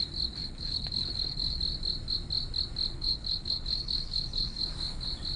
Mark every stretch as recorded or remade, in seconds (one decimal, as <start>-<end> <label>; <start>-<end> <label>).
0.0-0.4 recorded; 0.4-1.6 remade; 1.6-2.9 recorded; 2.9-4.7 remade; 4.7-5.4 recorded